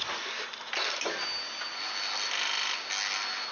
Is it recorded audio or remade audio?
recorded